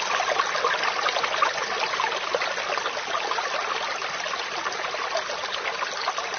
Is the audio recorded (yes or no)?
yes